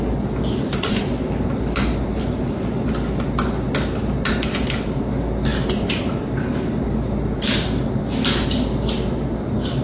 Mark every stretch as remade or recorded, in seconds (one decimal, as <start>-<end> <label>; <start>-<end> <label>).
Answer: 0.0-9.8 recorded